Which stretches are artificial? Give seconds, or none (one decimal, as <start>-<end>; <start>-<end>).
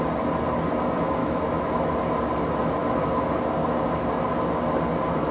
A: 1.2-1.9